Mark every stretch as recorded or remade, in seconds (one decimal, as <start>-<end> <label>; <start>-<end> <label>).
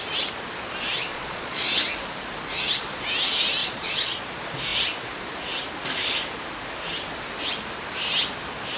0.0-1.1 recorded; 1.1-1.8 remade; 1.8-3.6 recorded; 3.6-4.2 remade; 4.2-8.8 recorded